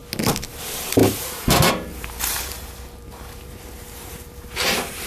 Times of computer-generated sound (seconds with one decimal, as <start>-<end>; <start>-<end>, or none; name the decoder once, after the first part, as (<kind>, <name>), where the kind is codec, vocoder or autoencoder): 0.6-5.1 (vocoder, BigVGAN v2)